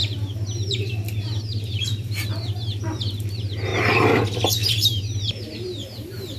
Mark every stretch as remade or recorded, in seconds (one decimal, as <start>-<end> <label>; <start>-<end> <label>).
0.0-3.7 remade; 3.7-4.7 recorded; 4.7-6.4 remade